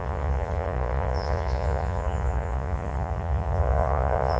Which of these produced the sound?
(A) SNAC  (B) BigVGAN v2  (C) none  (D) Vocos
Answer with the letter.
D